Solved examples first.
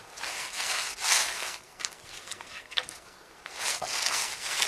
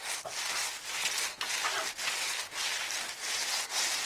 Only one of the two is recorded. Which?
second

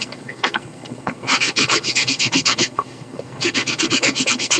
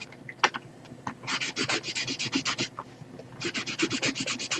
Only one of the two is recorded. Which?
second